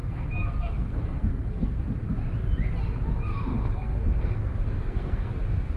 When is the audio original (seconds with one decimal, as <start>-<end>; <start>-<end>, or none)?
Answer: 1.8-3.5; 5.3-5.8